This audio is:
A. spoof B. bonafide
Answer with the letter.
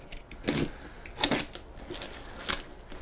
B